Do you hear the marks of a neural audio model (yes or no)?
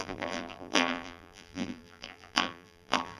yes